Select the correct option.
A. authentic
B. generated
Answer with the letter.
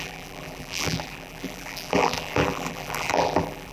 B